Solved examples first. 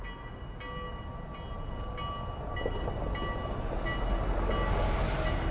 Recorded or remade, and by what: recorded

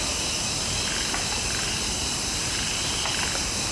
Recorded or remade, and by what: recorded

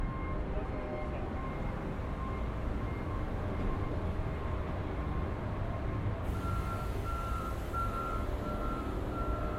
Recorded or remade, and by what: recorded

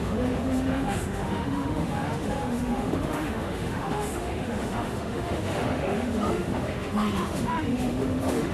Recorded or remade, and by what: remade, autoencoder, DAC-VAE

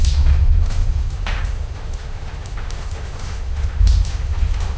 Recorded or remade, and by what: remade, autoencoder, DAC-VAE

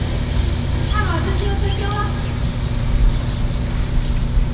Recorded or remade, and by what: recorded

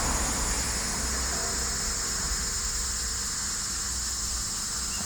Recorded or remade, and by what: recorded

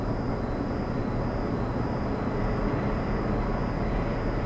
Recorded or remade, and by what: recorded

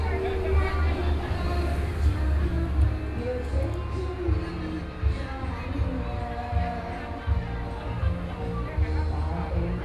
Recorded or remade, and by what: recorded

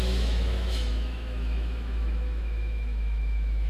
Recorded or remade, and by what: remade, autoencoder, DAC-VAE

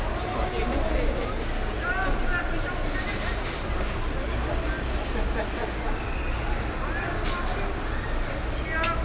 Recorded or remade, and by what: recorded